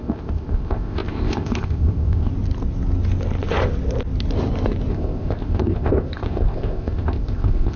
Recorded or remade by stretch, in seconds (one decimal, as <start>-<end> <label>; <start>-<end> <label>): 0.0-2.3 remade; 2.3-4.9 recorded; 4.9-7.8 remade

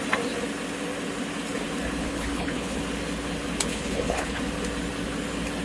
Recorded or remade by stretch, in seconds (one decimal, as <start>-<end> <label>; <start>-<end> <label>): 0.0-2.0 recorded; 2.0-2.8 remade; 2.8-3.7 recorded; 3.7-4.4 remade; 4.4-5.6 recorded

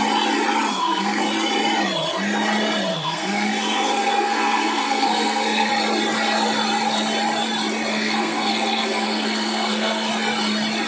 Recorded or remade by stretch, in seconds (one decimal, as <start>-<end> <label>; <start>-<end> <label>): 0.0-0.7 recorded; 0.7-1.3 remade; 1.3-2.9 recorded; 2.9-5.7 remade; 5.7-7.9 recorded; 7.9-10.1 remade; 10.1-10.9 recorded

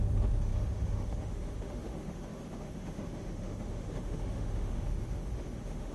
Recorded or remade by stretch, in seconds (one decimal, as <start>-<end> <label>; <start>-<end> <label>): 0.0-5.9 remade